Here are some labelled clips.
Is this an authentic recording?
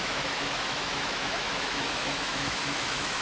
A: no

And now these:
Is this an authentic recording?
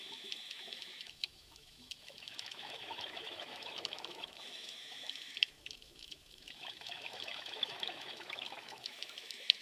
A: no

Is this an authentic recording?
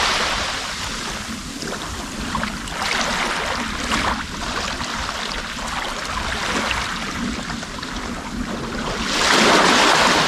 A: yes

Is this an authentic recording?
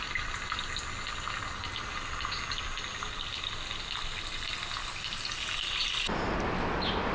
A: yes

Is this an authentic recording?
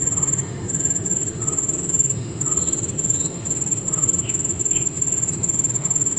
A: no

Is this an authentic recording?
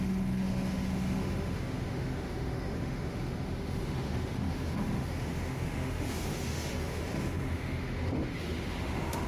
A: no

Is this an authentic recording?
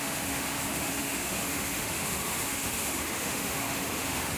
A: no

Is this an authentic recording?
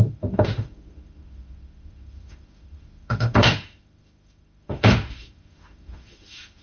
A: no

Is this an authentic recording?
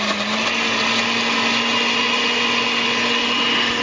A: yes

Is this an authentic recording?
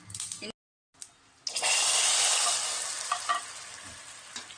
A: yes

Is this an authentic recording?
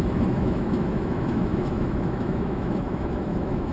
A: no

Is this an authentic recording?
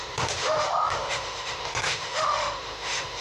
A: no